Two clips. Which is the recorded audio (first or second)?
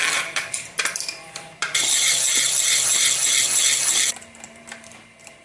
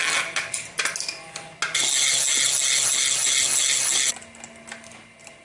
second